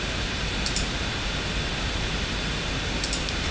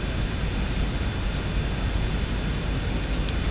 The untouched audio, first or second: second